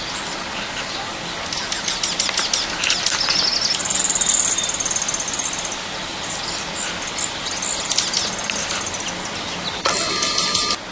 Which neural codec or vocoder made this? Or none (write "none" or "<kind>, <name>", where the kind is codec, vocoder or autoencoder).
none